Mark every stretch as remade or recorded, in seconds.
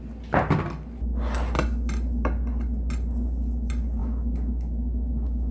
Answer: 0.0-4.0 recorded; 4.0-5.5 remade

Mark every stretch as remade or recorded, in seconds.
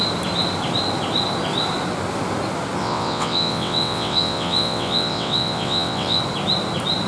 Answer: 0.0-2.8 recorded; 2.8-6.2 remade; 6.2-7.1 recorded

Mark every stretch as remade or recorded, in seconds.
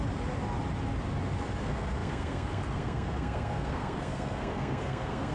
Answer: 0.0-1.6 recorded; 1.6-5.3 remade